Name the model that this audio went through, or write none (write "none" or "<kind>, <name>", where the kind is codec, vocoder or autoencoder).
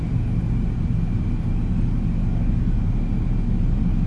none